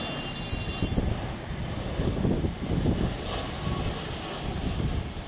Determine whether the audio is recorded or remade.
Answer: recorded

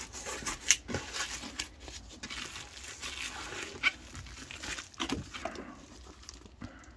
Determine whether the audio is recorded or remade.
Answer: recorded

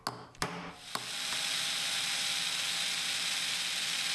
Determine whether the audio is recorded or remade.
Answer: recorded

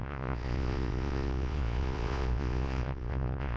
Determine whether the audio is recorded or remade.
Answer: remade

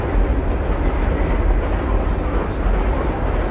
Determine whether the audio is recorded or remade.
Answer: recorded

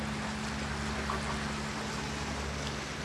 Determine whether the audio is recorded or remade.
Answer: recorded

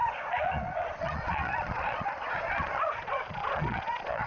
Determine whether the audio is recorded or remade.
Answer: remade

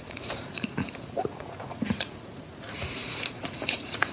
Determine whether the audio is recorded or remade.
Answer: remade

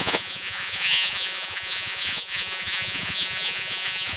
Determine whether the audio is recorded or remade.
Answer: remade